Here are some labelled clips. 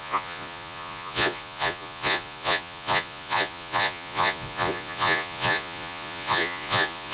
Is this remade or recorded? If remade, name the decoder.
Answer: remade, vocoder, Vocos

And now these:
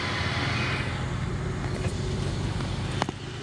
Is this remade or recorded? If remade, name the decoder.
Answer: recorded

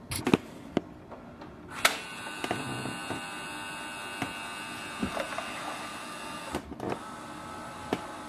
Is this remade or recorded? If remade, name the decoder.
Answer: recorded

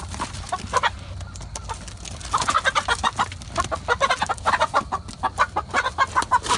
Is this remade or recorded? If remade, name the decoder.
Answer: recorded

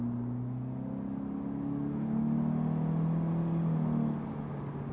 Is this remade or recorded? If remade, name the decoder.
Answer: recorded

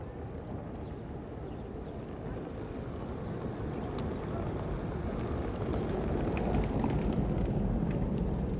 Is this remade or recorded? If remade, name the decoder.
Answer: recorded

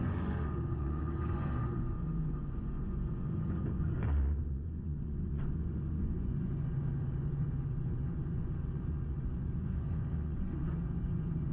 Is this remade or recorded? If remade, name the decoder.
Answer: remade, vocoder, Vocos